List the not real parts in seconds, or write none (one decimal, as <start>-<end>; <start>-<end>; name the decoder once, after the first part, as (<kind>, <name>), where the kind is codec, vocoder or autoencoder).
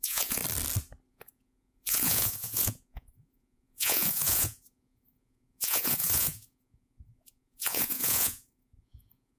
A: 0.0-0.4 (vocoder, Vocos); 1.1-9.4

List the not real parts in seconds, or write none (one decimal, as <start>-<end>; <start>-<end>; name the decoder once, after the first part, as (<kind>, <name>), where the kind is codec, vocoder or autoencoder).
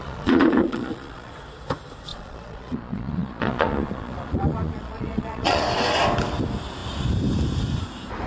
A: 0.0-1.3 (vocoder, Vocos); 2.1-5.6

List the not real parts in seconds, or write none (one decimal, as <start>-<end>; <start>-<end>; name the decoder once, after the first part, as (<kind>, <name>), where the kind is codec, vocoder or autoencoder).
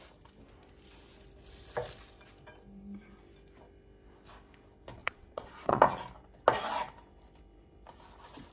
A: 5.0-5.8 (vocoder, Vocos)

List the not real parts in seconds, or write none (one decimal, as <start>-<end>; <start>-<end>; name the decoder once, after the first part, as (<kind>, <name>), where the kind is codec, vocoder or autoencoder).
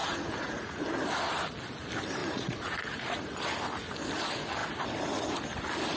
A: 0.0-0.8 (vocoder, Vocos); 2.2-3.2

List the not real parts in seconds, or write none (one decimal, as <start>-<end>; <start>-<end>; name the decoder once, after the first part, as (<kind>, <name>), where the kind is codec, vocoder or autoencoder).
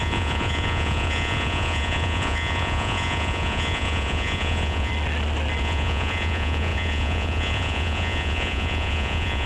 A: 0.0-4.9 (vocoder, Vocos); 5.6-9.5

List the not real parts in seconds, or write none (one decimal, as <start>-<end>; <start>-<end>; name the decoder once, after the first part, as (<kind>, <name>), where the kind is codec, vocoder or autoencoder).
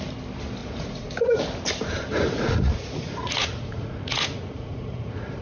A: 0.6-1.1 (vocoder, Vocos); 2.1-5.4